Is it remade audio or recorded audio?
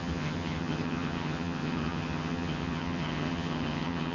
remade